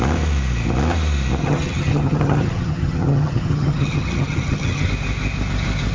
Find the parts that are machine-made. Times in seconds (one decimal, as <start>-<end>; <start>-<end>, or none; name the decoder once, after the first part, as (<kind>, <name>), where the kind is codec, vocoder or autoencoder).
1.4-4.9 (vocoder, HiFi-GAN)